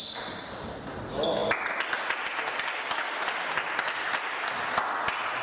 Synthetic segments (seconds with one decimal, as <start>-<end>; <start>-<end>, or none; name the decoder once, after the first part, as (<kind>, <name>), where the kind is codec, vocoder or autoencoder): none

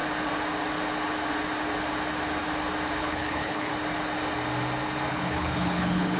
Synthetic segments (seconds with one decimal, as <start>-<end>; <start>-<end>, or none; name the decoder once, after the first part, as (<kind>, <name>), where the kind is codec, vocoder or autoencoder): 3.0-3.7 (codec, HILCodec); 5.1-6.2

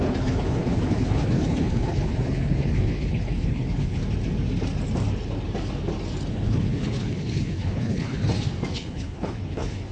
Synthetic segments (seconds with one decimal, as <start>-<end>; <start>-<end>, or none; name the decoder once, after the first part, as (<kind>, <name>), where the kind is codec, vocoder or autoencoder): 0.0-4.0 (codec, HILCodec); 6.3-8.2; 8.7-9.9

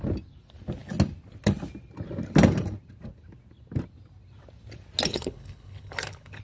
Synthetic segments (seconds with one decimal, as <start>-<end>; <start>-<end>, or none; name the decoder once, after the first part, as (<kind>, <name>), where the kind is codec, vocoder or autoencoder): 5.1-6.4 (codec, HILCodec)